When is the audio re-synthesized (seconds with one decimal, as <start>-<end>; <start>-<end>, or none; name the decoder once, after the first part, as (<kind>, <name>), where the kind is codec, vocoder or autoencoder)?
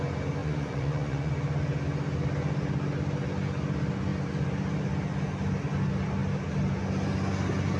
0.4-1.3 (vocoder, Vocos)